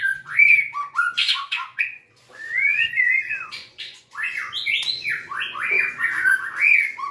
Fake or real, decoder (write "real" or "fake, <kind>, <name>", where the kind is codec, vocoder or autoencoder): fake, vocoder, Vocos